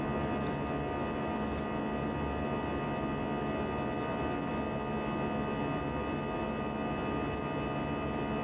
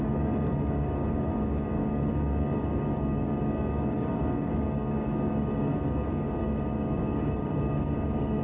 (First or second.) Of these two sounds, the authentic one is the first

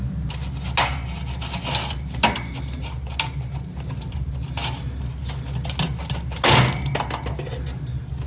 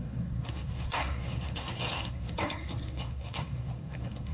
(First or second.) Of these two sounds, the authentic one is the first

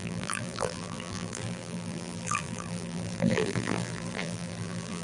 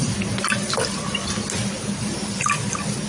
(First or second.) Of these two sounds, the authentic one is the second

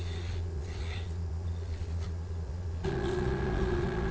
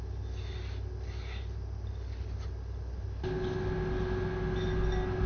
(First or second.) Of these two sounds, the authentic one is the second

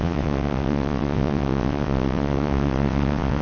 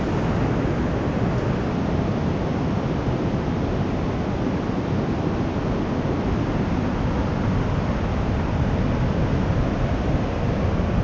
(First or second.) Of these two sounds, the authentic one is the second